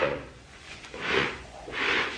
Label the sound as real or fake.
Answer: fake